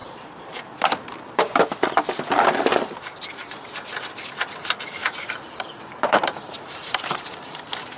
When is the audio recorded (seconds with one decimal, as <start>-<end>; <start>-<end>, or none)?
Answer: 1.6-5.0; 7.6-8.0